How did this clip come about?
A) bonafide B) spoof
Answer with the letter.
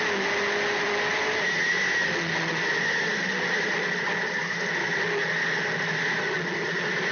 A